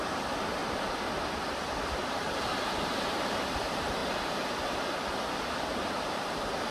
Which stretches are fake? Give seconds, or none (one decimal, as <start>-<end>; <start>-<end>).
0.0-0.6; 2.9-4.0; 5.4-6.7